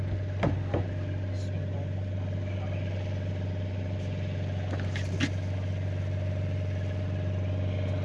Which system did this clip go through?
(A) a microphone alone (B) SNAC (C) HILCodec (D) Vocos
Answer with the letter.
A